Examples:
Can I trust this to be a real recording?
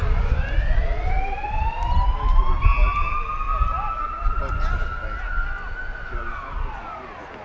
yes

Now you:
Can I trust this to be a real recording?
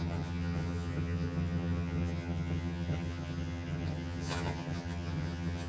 no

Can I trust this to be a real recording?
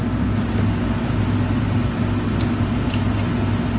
yes